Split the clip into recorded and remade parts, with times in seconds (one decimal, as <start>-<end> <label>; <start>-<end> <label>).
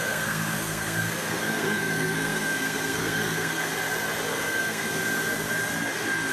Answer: 0.0-3.7 remade; 3.7-4.3 recorded; 4.3-5.0 remade; 5.0-6.3 recorded